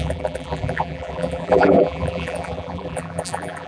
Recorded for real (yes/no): no